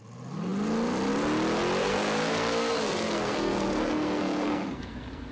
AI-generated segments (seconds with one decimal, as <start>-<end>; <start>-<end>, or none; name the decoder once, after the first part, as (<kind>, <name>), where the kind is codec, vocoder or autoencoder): 1.8-5.3 (codec, SNAC)